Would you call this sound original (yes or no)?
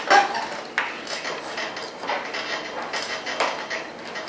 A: yes